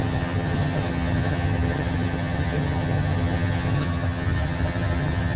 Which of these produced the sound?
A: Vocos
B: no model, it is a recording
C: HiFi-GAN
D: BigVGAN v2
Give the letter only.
C